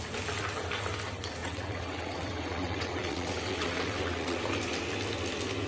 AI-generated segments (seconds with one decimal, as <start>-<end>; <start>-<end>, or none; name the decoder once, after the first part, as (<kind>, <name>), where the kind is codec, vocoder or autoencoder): 1.4-4.4 (vocoder, WaveNeXt)

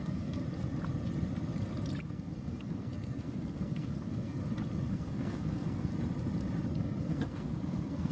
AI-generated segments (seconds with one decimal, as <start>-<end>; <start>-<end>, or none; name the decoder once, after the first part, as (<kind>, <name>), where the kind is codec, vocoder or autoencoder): 0.0-0.4 (codec, SNAC); 2.0-4.4; 4.9-5.9; 7.0-8.1

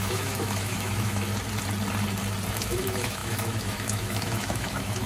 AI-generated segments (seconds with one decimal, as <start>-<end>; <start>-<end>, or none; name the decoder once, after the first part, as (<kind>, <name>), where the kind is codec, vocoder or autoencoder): 0.0-1.3 (autoencoder, DAC-VAE); 2.5-5.1